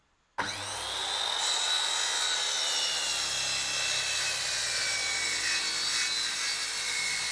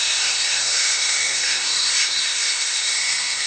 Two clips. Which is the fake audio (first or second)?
second